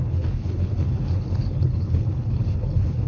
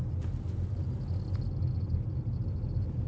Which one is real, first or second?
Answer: second